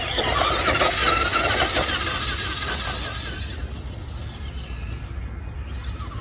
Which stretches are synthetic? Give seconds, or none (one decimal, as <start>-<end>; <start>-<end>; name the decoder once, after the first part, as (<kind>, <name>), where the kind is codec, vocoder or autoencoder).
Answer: none